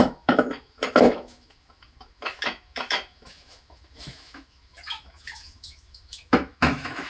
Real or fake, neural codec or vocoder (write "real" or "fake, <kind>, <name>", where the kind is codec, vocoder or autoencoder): fake, autoencoder, DAC-VAE